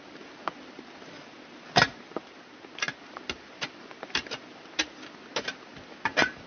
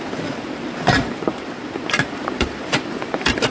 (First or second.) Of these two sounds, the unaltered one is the first